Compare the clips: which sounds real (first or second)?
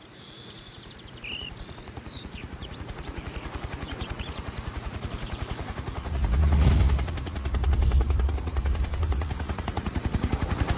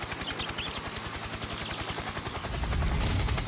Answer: second